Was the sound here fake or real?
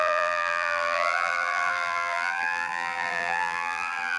fake